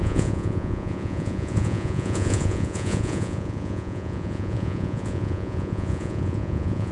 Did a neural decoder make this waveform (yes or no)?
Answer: yes